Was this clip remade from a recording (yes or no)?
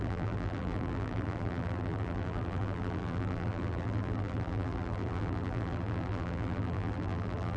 yes